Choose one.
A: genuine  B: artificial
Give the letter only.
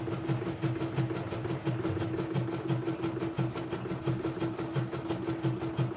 A